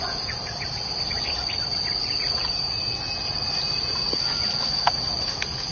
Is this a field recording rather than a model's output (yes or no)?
yes